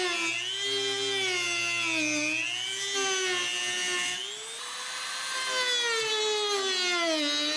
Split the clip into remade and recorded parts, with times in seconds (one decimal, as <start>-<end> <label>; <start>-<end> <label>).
0.0-7.6 recorded